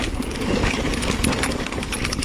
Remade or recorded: remade